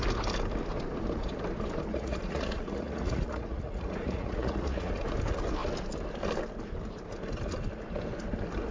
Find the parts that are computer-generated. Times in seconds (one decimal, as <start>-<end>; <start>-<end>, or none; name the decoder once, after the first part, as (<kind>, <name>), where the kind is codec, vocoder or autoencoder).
1.9-4.9 (vocoder, Vocos)